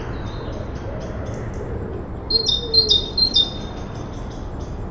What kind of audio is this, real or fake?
real